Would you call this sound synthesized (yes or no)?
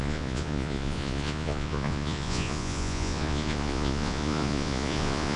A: yes